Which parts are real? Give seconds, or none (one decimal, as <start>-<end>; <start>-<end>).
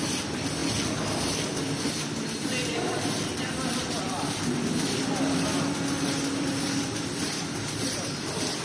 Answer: 0.6-4.1